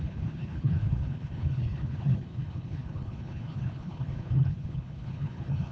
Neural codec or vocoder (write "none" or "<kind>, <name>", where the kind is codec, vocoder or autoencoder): codec, HILCodec